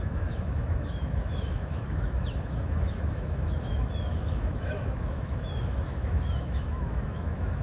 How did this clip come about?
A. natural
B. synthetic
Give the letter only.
B